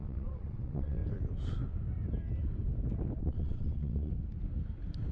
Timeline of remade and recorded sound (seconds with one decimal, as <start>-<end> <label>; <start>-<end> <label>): 0.0-1.0 remade; 1.0-3.2 recorded; 3.2-4.1 remade; 4.1-5.1 recorded

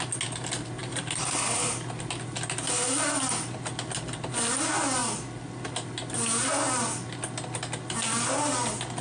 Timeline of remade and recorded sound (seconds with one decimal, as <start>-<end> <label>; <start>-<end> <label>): 0.0-0.8 recorded; 0.8-1.6 remade; 1.6-9.0 recorded

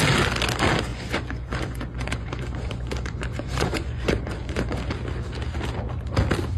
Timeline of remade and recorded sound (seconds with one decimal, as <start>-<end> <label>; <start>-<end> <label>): 0.0-0.9 recorded; 0.9-4.9 remade; 4.9-6.6 recorded

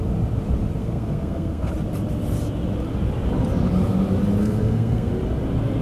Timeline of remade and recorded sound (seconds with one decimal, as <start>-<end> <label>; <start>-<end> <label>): 0.0-0.8 recorded; 0.8-1.7 remade; 1.7-4.4 recorded; 4.4-5.1 remade; 5.1-5.8 recorded